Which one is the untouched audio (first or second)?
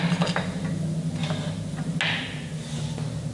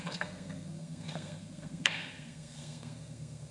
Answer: first